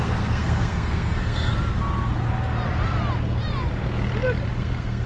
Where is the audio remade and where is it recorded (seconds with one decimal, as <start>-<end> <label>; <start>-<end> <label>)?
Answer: 0.0-1.5 remade; 1.5-4.6 recorded; 4.6-5.1 remade